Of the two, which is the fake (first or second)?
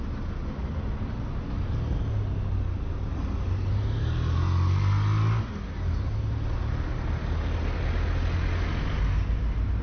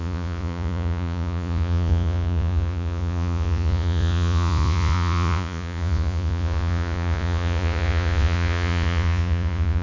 second